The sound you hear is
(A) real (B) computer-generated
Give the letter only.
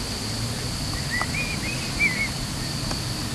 A